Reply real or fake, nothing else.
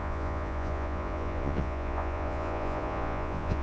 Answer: fake